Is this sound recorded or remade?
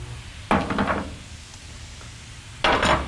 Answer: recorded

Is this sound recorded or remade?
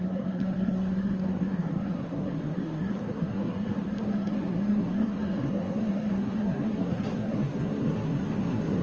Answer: remade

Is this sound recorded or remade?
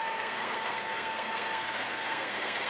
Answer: remade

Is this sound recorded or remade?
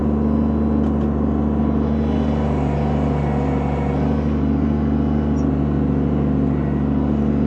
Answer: recorded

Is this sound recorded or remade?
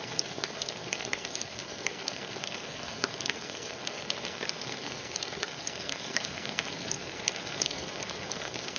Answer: remade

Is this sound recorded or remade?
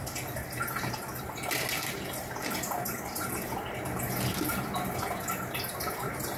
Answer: recorded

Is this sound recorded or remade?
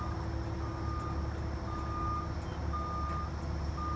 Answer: recorded